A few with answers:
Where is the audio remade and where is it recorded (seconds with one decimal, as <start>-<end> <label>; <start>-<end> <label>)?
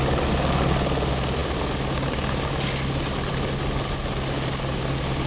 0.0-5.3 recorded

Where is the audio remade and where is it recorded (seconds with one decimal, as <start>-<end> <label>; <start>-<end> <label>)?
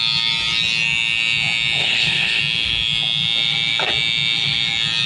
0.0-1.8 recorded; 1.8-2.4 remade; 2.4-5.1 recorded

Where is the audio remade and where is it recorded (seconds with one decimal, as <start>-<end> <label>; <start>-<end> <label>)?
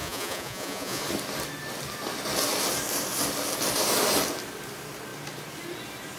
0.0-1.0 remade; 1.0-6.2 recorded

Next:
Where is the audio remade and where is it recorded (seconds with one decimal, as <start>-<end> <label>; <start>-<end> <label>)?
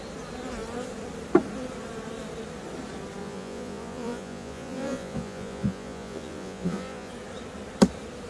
0.0-3.2 recorded; 3.2-7.1 remade; 7.1-8.3 recorded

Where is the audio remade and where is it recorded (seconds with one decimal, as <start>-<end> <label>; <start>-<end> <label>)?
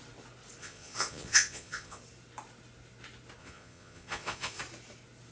0.0-0.6 recorded; 0.6-2.0 remade; 2.0-3.4 recorded; 3.4-4.6 remade; 4.6-5.3 recorded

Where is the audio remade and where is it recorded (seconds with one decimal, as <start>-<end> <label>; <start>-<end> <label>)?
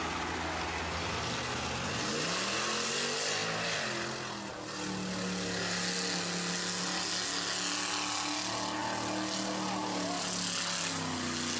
0.0-11.6 recorded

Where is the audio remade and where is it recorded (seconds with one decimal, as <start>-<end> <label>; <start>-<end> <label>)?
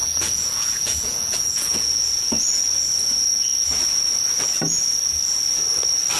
0.0-2.3 remade; 2.3-6.2 recorded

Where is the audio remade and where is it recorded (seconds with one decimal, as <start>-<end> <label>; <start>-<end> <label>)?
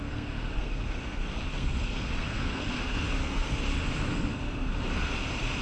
0.0-3.5 remade; 3.5-4.1 recorded; 4.1-4.7 remade; 4.7-5.6 recorded